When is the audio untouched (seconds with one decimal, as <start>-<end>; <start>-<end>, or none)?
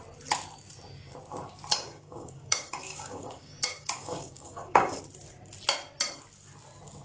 0.0-1.7; 5.0-7.0